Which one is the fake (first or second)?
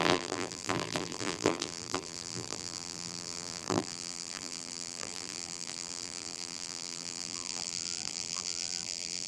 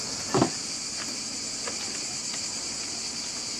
first